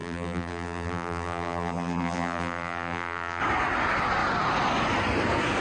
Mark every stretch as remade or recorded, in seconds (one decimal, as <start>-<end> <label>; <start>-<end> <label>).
0.0-3.4 remade; 3.4-5.6 recorded

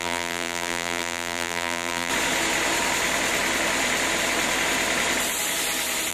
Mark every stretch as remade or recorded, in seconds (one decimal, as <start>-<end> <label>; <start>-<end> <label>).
0.0-2.1 remade; 2.1-6.1 recorded

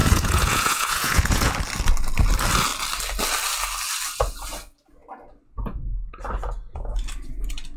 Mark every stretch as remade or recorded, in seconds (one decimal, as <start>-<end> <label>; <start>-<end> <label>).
0.0-1.5 remade; 1.5-7.8 recorded

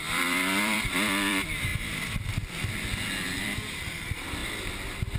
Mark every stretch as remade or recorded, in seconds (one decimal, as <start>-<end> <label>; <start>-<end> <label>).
0.0-1.7 remade; 1.7-2.9 recorded; 2.9-5.2 remade